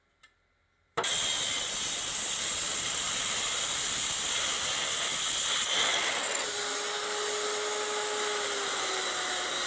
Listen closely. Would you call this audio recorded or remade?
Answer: recorded